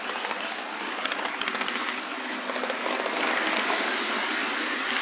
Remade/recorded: recorded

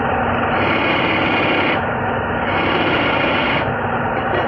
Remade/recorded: recorded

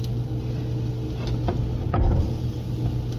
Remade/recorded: recorded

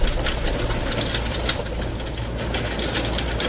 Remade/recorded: recorded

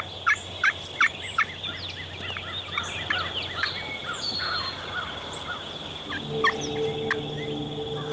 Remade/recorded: recorded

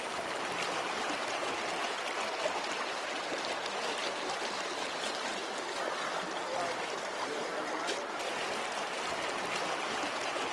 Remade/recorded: recorded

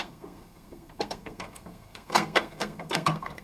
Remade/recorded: remade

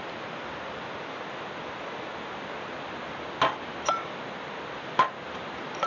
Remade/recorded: recorded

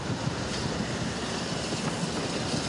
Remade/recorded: recorded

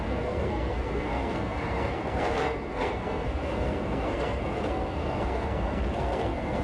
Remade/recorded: remade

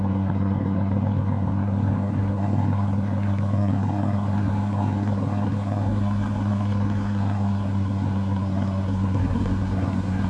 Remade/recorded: remade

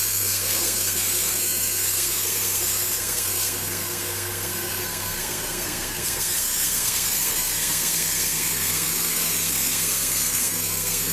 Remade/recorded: remade